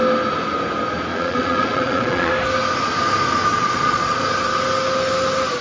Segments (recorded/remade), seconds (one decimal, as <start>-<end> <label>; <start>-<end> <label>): 0.0-1.1 recorded; 1.1-2.3 remade; 2.3-3.5 recorded; 3.5-4.2 remade; 4.2-5.6 recorded